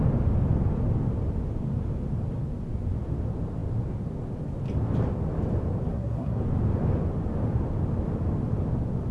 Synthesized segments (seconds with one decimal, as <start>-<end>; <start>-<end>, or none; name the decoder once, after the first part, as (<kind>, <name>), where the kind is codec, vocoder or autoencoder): 5.9-6.4 (codec, SNAC)